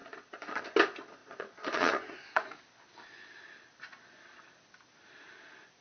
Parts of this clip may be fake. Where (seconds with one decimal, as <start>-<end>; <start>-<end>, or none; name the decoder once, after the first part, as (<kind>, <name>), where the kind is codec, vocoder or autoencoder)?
0.0-0.6 (vocoder, Vocos); 1.2-2.6